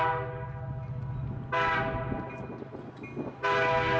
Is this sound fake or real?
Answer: real